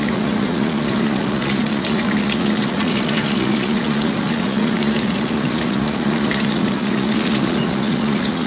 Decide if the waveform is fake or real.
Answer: fake